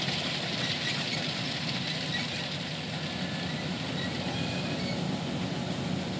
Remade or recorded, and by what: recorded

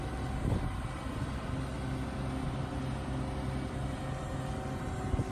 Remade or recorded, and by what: recorded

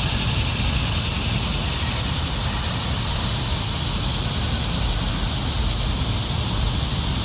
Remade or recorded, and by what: recorded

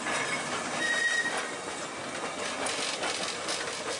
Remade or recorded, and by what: recorded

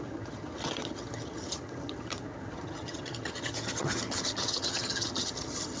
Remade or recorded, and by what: remade, vocoder, HiFi-GAN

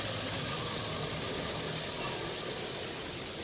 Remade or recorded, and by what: recorded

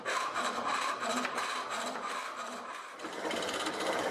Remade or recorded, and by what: remade, vocoder, BigVGAN v2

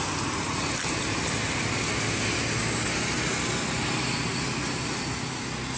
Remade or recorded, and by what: recorded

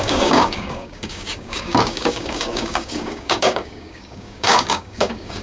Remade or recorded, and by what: remade, codec, DAC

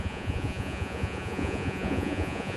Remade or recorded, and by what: remade, vocoder, Vocos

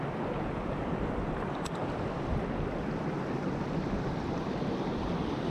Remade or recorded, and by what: recorded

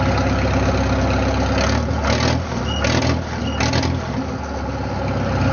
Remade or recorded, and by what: recorded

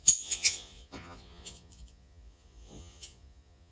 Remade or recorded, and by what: remade, vocoder, Vocos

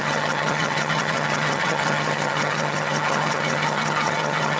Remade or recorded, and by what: remade, vocoder, HiFi-GAN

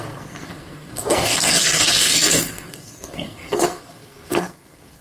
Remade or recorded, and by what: remade, codec, SNAC